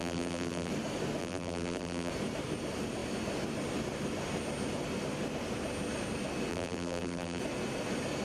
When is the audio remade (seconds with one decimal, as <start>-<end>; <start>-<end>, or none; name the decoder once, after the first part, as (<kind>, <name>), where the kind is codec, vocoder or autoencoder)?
0.0-0.7 (vocoder, BigVGAN v2); 1.2-2.1; 6.5-7.4